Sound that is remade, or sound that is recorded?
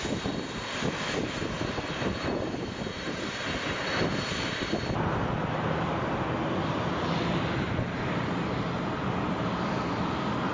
recorded